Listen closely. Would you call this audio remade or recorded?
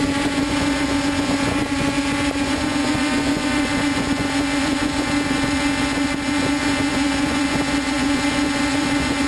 remade